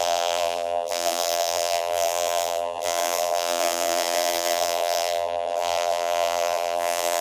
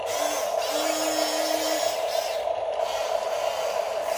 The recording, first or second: second